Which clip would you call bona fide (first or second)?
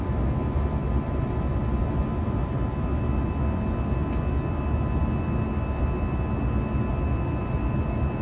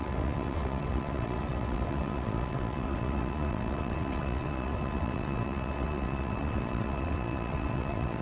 first